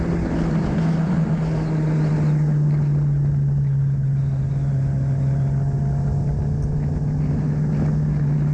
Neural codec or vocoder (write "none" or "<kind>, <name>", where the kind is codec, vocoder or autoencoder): none